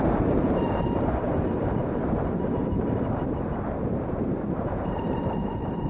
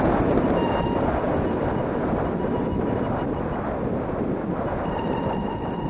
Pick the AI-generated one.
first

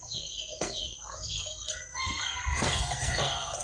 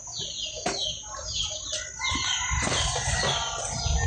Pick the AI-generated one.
first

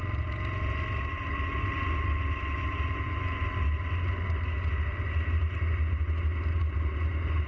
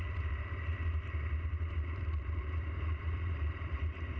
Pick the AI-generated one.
second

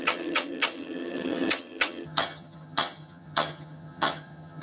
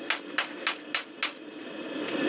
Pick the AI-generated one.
first